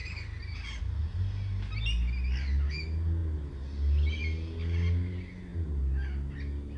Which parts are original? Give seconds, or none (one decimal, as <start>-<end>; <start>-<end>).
0.8-6.8